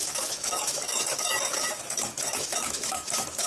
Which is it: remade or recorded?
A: remade